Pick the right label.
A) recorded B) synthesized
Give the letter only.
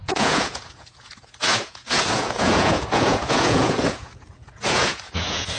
B